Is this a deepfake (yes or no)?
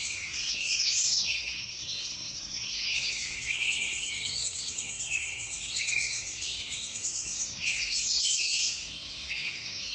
yes